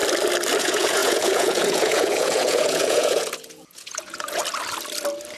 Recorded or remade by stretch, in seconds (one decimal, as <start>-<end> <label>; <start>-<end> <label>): 0.0-0.6 recorded; 0.6-4.4 remade; 4.4-5.4 recorded